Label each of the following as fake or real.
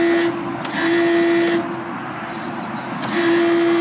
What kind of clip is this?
real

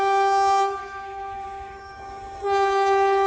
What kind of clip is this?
fake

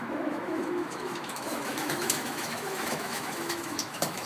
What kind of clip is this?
fake